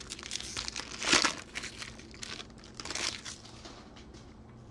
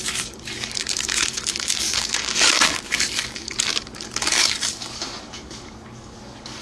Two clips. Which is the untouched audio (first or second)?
first